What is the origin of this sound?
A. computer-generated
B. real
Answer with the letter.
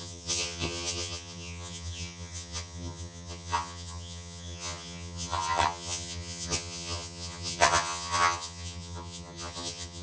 A